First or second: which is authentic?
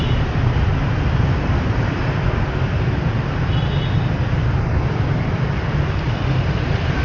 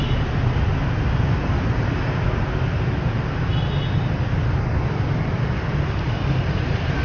second